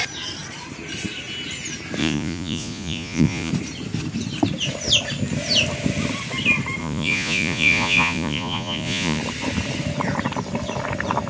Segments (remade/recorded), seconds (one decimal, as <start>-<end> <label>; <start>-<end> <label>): 0.0-2.0 recorded; 2.0-3.5 remade; 3.5-6.8 recorded; 6.8-9.2 remade; 9.2-11.3 recorded